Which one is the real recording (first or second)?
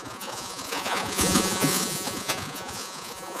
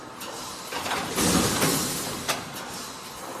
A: second